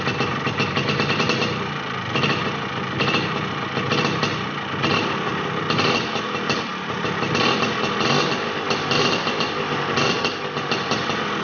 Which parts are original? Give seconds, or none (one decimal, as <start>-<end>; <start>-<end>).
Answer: 0.0-11.4

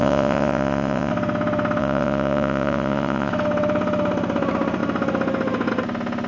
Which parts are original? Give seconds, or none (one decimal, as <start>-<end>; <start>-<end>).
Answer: 1.1-1.8; 3.3-6.3

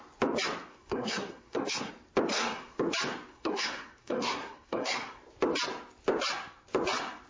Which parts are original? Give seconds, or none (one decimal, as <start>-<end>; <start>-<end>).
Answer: 0.0-0.7; 1.9-2.3; 2.8-3.3; 5.2-7.3